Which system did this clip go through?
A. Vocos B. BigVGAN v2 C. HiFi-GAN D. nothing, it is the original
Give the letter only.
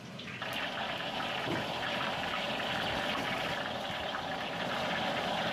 B